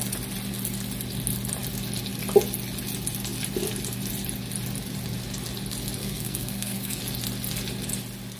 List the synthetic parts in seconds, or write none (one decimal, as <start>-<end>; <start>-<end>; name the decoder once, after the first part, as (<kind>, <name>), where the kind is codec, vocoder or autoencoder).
6.0-7.0 (codec, SNAC)